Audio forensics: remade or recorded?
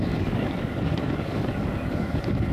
remade